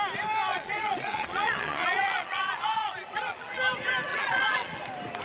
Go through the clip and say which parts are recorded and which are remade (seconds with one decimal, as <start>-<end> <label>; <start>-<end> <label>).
0.0-0.5 recorded; 0.5-3.6 remade; 3.6-4.1 recorded; 4.1-4.8 remade; 4.8-5.2 recorded